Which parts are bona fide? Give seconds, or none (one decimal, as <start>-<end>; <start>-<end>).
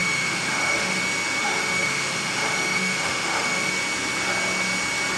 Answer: 1.0-1.4; 3.7-5.2